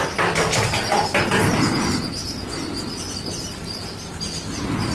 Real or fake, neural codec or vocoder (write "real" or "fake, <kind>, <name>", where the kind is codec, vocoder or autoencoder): real